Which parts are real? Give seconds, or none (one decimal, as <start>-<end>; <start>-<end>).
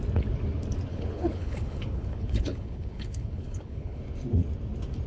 0.0-0.9; 4.0-5.1